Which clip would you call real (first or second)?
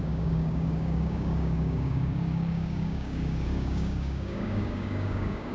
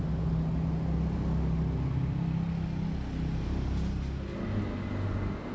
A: second